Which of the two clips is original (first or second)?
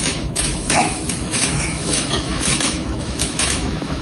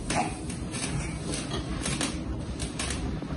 second